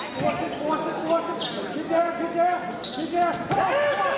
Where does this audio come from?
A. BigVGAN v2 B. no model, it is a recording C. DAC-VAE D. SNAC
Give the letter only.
B